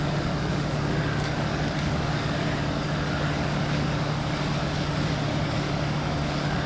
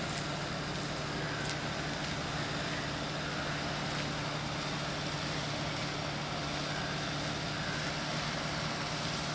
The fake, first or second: first